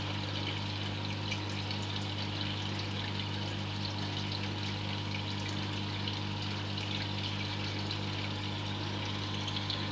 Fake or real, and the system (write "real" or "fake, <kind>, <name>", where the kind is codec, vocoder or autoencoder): real